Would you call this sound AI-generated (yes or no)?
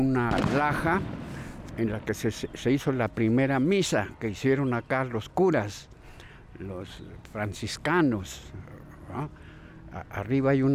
no